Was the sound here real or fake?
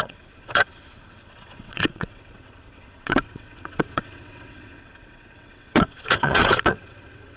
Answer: fake